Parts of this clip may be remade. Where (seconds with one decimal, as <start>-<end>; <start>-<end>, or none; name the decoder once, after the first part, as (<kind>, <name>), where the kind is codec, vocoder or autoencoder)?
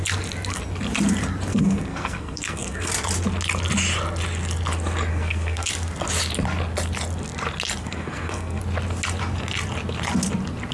1.5-2.9 (codec, SNAC); 5.1-5.7; 7.8-8.6